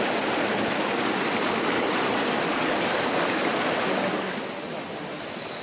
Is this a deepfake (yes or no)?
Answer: no